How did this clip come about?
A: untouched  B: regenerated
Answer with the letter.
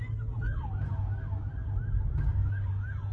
A